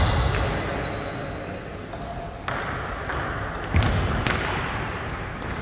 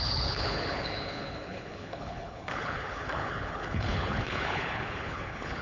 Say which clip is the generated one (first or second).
second